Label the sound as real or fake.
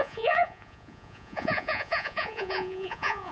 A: fake